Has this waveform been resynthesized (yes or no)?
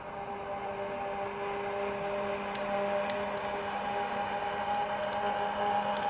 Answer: no